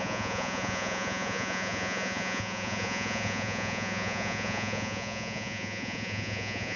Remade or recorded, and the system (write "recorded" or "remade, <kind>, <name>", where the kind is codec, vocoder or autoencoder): remade, vocoder, Vocos